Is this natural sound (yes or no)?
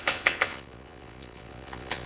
no